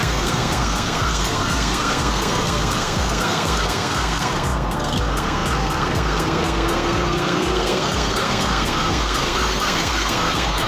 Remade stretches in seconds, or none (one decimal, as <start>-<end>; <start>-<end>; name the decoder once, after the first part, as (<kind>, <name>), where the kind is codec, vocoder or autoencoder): 0.0-10.7 (codec, SNAC)